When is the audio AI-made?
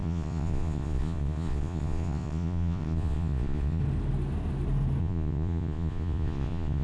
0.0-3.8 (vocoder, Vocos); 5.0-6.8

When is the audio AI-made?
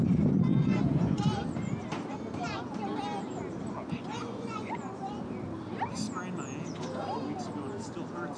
0.6-1.2 (vocoder, Vocos); 4.2-5.2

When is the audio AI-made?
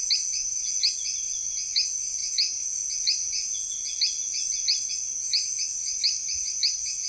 none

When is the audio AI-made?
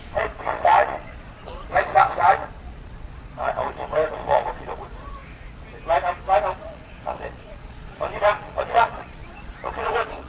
0.0-5.2 (vocoder, Vocos); 6.6-10.3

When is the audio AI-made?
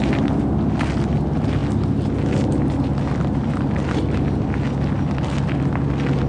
none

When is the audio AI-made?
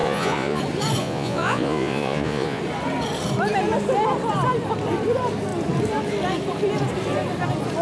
0.0-0.6 (vocoder, Vocos); 1.0-2.6